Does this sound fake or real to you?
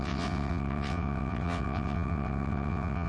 fake